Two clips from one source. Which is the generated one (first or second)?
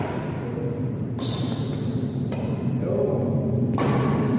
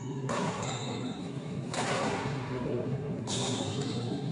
second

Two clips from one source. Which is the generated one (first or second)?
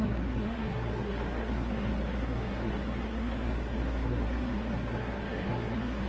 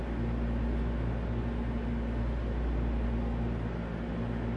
first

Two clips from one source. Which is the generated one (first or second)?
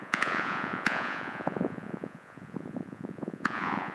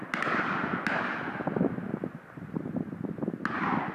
first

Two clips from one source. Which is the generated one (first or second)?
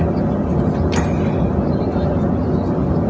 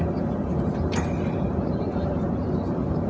second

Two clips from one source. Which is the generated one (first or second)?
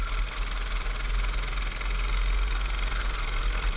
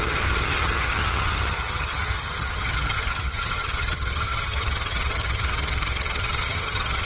second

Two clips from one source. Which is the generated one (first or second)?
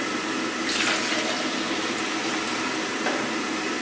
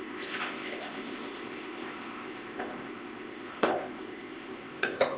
second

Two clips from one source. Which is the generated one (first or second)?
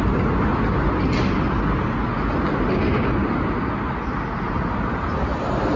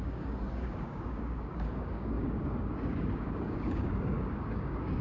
second